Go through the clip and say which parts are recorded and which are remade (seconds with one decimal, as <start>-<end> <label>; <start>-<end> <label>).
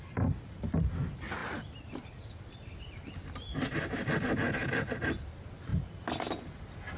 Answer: 0.0-7.0 recorded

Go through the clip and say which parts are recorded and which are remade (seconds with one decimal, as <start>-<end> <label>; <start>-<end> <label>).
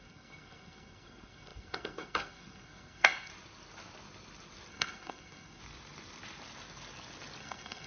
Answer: 0.0-3.3 remade; 3.3-4.7 recorded; 4.7-5.6 remade; 5.6-7.4 recorded; 7.4-7.9 remade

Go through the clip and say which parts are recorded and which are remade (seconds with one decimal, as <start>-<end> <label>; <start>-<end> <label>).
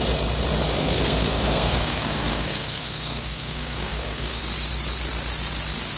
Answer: 0.0-0.8 recorded; 0.8-4.4 remade; 4.4-6.0 recorded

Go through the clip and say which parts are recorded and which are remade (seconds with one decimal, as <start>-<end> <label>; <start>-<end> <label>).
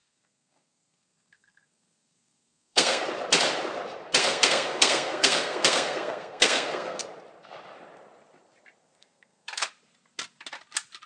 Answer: 0.0-3.0 remade; 3.0-4.2 recorded; 4.2-7.0 remade; 7.0-8.8 recorded; 8.8-9.7 remade; 9.7-11.1 recorded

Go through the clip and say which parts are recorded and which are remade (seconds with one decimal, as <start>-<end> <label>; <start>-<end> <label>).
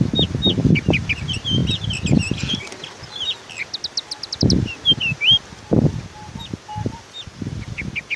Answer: 0.0-8.2 recorded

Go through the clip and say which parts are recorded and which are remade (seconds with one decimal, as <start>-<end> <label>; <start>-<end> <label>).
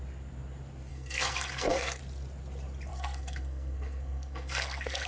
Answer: 0.0-0.9 recorded; 0.9-2.0 remade; 2.0-2.9 recorded; 2.9-5.1 remade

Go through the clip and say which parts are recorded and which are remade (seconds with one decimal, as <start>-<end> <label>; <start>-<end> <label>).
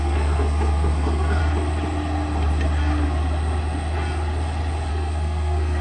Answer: 0.0-1.4 remade; 1.4-4.9 recorded; 4.9-5.8 remade